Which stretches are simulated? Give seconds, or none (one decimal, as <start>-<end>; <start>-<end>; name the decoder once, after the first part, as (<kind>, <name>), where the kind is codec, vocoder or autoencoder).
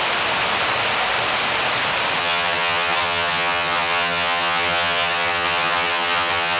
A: 2.2-6.6 (vocoder, HiFi-GAN)